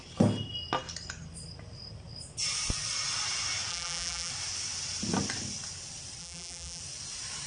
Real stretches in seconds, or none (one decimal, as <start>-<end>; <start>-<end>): 0.0-3.7; 4.3-6.2; 6.8-7.5